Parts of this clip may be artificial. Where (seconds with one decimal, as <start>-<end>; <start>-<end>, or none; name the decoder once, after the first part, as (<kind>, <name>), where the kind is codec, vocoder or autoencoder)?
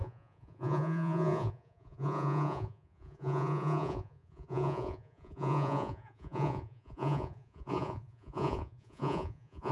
0.0-9.7 (vocoder, Vocos)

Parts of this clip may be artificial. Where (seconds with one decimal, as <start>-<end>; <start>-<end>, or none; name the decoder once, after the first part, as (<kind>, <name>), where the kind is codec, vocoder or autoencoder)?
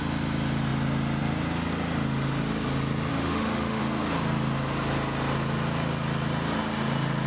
3.1-3.8 (autoencoder, DAC-VAE)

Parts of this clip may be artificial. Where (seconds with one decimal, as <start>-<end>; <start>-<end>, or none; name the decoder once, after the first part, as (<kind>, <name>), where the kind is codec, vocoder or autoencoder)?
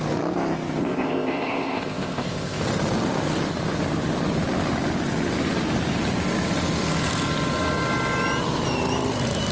0.8-2.6 (codec, ZipCodec)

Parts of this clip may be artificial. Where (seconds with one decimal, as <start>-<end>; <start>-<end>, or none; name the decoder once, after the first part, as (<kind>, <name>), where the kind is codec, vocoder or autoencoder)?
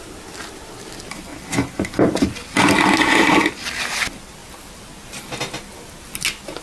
none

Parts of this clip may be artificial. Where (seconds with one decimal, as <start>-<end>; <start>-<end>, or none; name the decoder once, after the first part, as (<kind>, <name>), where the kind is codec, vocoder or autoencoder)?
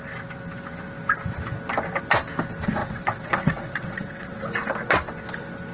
2.8-4.4 (vocoder, WaveNeXt)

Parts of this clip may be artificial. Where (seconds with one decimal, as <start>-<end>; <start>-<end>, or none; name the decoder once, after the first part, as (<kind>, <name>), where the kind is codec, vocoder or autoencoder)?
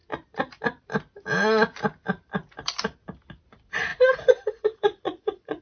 3.9-5.6 (vocoder, Vocos)